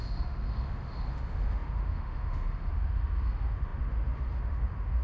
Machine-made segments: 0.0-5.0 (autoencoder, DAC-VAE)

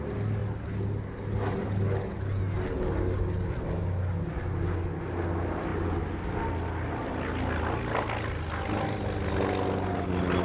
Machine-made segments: none